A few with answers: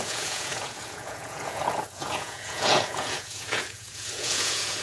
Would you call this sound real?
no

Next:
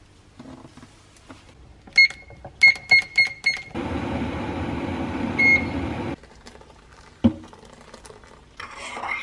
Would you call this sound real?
yes